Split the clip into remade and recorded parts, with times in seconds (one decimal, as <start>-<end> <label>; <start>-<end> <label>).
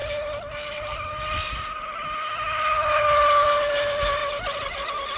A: 0.0-5.2 recorded